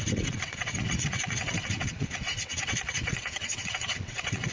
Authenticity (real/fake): fake